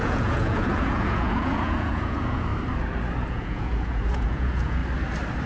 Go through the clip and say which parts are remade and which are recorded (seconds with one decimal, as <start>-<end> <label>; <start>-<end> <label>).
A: 0.0-2.5 remade; 2.5-3.3 recorded; 3.3-4.8 remade; 4.8-5.5 recorded